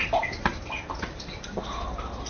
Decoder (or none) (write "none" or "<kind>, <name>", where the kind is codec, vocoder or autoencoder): none